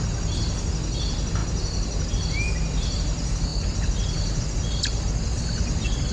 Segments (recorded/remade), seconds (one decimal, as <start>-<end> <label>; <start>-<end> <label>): 0.0-6.1 recorded